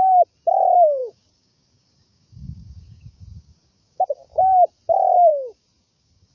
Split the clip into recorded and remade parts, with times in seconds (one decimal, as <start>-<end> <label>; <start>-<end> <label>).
0.0-1.0 recorded; 1.0-4.4 remade; 4.4-5.3 recorded; 5.3-6.3 remade

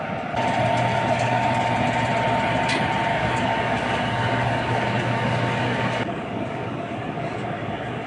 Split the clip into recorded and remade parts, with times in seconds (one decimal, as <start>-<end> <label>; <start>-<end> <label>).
0.0-0.9 recorded; 0.9-1.7 remade; 1.7-3.1 recorded; 3.1-8.1 remade

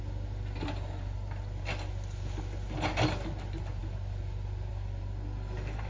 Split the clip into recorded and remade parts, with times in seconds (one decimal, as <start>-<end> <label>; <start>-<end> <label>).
0.0-5.9 recorded

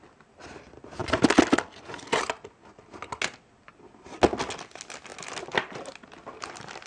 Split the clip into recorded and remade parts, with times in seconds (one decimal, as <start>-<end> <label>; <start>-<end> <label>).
0.0-1.0 recorded; 1.0-2.0 remade; 2.0-6.9 recorded

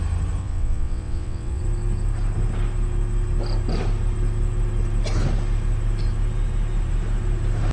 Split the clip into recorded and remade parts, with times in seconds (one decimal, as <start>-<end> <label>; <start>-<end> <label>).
0.0-0.4 recorded; 0.4-1.6 remade; 1.6-7.7 recorded